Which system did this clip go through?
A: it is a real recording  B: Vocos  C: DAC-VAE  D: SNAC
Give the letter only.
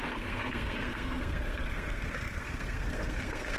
D